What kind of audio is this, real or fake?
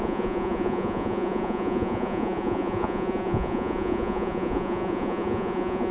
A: fake